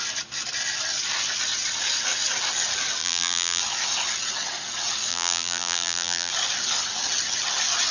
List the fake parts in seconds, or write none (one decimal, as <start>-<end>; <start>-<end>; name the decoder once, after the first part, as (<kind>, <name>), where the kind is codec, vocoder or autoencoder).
3.0-3.6 (vocoder, BigVGAN v2); 5.1-6.3